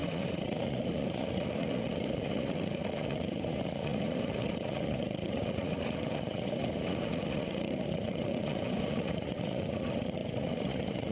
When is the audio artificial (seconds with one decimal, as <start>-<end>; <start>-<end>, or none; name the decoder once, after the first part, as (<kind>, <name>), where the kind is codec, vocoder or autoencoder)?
0.0-11.1 (vocoder, Vocos)